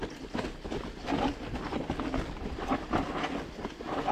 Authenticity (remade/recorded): recorded